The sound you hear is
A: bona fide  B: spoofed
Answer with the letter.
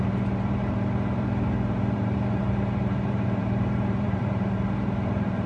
B